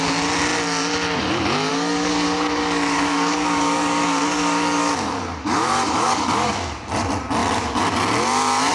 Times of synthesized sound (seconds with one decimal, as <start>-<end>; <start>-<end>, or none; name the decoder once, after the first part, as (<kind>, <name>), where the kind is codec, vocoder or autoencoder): 1.7-6.5 (codec, DAC)